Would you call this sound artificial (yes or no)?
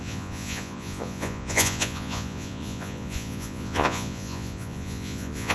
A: yes